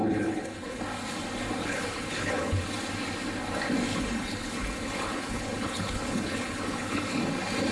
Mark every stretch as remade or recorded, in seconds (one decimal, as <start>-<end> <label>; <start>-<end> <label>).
0.0-0.8 remade; 0.8-1.6 recorded; 1.6-2.7 remade; 2.7-3.9 recorded; 3.9-7.2 remade; 7.2-7.7 recorded